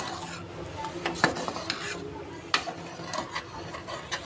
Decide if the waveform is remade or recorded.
recorded